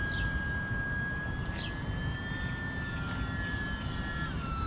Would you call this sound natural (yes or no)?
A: yes